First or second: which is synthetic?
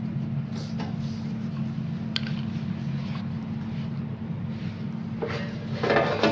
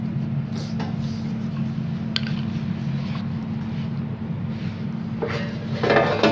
first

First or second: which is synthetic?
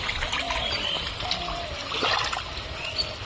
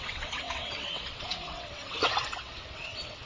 second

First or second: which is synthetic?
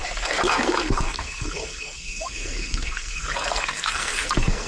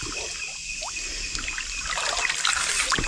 first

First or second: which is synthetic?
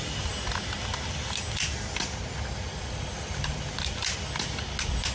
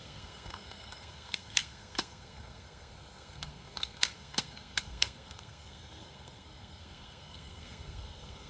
second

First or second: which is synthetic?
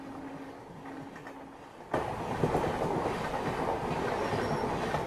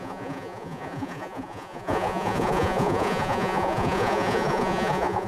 second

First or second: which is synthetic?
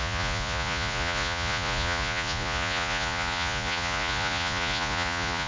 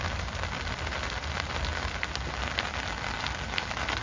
first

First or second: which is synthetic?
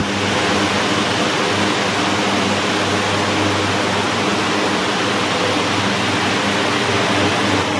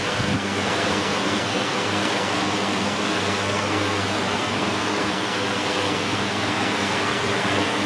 second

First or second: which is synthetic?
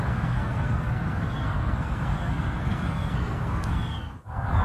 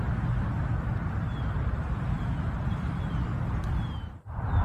first